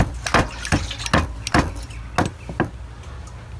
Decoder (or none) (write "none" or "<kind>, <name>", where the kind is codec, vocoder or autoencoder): none